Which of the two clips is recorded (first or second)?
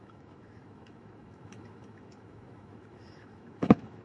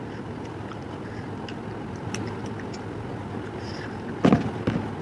second